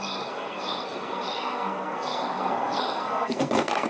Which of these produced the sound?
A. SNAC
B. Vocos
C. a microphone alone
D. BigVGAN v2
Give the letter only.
A